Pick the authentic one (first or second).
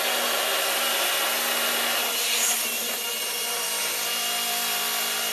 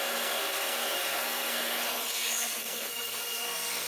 first